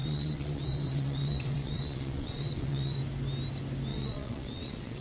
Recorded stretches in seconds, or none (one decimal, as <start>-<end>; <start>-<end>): 3.0-3.9